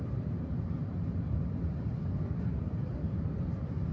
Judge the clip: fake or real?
real